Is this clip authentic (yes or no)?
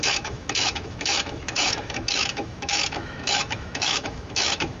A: no